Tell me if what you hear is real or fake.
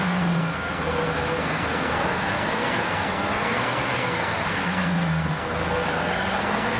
fake